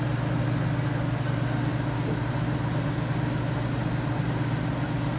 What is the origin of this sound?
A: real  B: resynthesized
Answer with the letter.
A